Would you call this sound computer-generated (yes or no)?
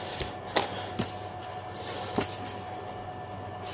no